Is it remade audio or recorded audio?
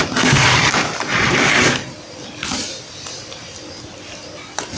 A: recorded